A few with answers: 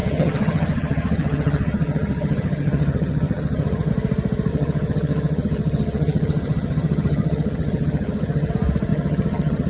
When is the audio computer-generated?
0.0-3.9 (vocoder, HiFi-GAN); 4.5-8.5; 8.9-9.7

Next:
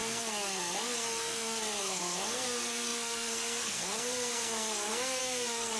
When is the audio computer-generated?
0.0-5.8 (codec, SNAC)

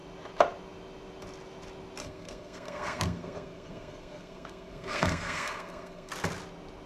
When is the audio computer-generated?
2.0-6.1 (codec, SNAC)

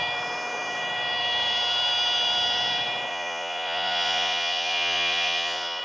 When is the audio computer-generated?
3.1-5.8 (vocoder, Vocos)

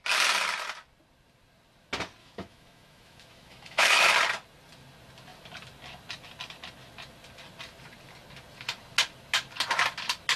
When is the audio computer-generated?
2.2-4.1 (autoencoder, DAC-VAE)

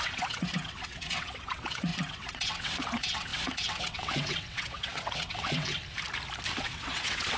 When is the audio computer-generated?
0.0-5.8 (vocoder, WaveNeXt); 6.6-7.4